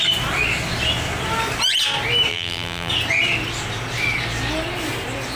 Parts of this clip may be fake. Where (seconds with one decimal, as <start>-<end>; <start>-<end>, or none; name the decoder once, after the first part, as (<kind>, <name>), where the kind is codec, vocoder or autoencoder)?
2.3-2.9 (vocoder, BigVGAN v2)